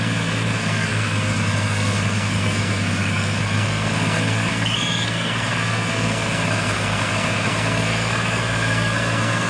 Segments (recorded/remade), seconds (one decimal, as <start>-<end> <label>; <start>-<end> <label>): 0.0-9.5 remade